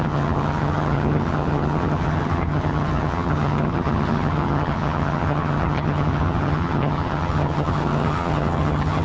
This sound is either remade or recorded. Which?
remade